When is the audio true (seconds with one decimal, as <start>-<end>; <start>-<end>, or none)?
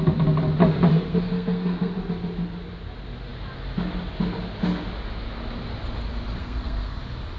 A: 0.0-0.9; 2.0-6.4; 7.0-7.4